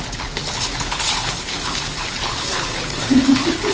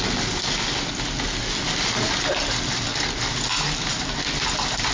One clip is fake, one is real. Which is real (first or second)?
second